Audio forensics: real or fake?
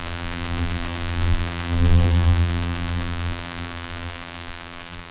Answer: fake